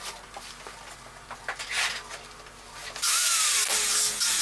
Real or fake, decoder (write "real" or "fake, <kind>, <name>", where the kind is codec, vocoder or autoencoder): real